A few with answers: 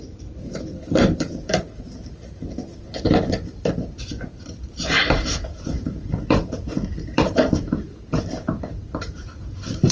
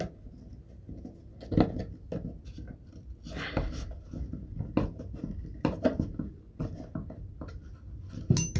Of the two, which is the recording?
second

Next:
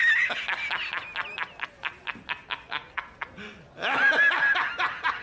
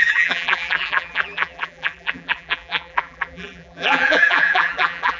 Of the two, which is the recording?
first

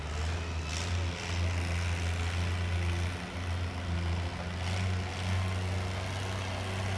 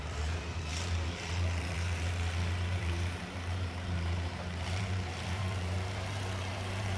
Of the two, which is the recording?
first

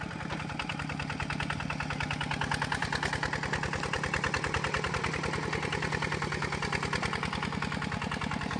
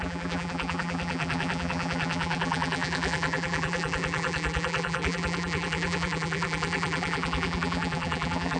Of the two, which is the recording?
first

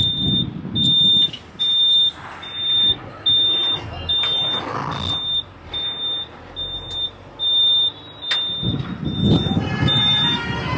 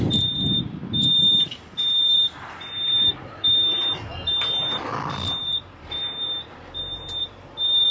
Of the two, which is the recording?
first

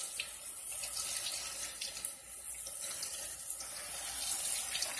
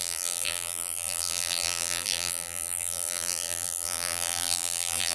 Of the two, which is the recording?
first